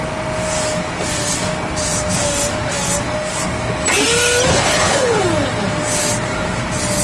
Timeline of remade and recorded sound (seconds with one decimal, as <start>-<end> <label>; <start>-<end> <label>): 0.0-4.5 recorded; 4.5-5.2 remade; 5.2-7.0 recorded